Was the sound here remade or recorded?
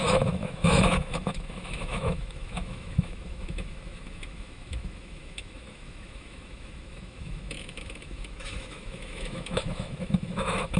remade